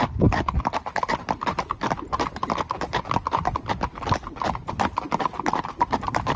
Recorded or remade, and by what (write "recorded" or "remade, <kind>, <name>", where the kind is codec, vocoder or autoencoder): recorded